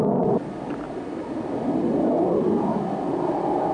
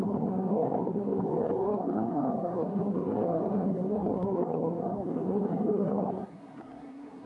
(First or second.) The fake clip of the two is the second